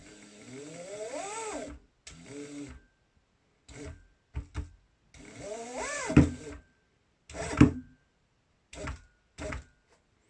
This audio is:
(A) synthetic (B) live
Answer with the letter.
B